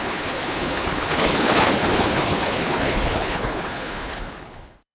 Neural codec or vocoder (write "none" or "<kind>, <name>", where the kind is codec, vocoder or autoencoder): codec, HILCodec